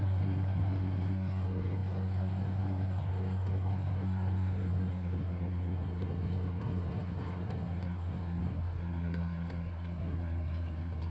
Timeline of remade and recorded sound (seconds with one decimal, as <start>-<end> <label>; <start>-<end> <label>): 0.0-11.1 remade